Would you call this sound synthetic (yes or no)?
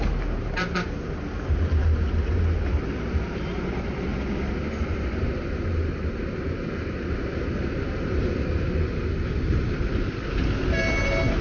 no